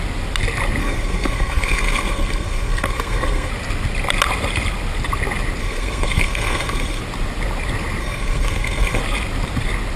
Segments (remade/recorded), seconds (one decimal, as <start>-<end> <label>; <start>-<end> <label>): 0.0-0.8 recorded; 0.8-3.5 remade; 3.5-5.6 recorded; 5.6-7.0 remade; 7.0-8.0 recorded; 8.0-9.0 remade; 9.0-10.0 recorded